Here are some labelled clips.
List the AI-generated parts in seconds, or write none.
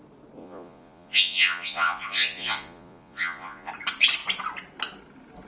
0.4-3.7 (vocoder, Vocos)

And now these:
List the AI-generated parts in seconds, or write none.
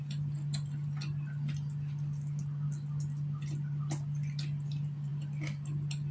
none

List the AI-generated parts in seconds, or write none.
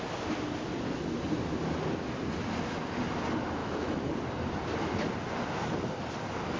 3.6-4.1 (autoencoder, DAC-VAE)